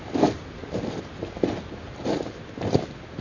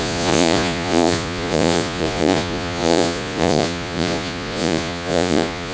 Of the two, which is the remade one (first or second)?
second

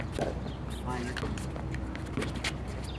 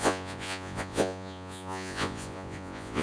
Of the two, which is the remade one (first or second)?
second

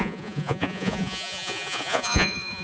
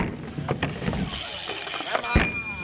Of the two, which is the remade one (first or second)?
first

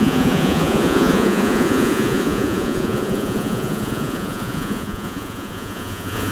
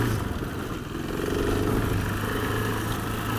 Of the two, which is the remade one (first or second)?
first